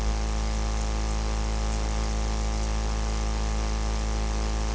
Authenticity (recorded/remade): recorded